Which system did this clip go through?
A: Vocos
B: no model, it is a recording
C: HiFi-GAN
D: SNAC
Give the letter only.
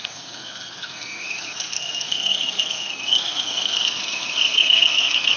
D